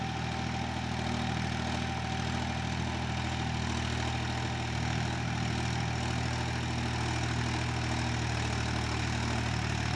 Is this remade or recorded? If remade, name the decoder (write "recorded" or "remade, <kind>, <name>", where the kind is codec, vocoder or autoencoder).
recorded